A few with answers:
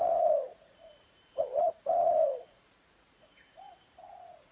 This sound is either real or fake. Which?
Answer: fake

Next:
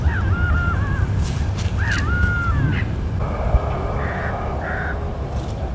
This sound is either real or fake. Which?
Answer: real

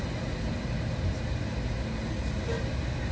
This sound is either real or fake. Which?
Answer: real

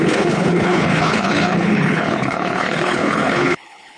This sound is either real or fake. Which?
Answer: fake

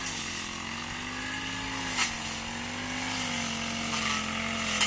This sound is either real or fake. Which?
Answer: real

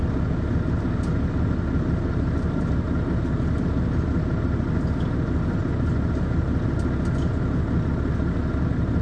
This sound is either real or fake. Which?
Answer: real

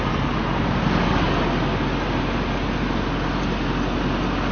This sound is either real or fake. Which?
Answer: real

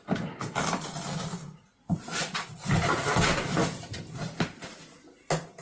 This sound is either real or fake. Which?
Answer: real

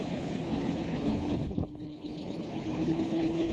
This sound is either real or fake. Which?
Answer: fake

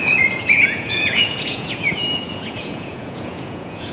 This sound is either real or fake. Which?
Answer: fake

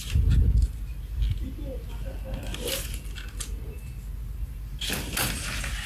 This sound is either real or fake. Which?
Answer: real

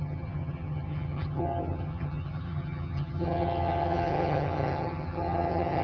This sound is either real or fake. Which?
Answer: fake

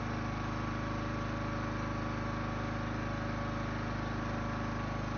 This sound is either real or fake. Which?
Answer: real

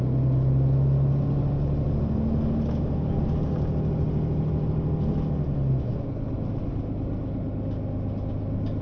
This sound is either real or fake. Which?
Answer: real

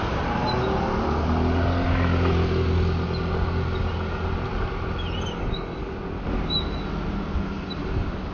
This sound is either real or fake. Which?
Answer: real